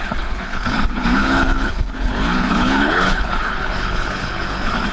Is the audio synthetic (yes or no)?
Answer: yes